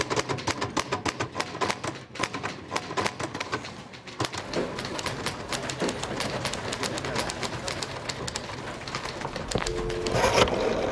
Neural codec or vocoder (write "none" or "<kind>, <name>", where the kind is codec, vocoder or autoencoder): none